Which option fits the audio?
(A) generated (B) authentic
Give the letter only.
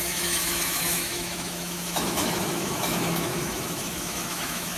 A